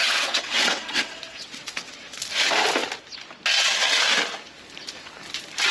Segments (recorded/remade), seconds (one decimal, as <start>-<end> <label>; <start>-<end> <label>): 0.0-2.2 remade; 2.2-5.7 recorded